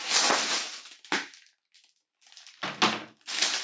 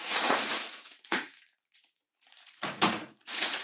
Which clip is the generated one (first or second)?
second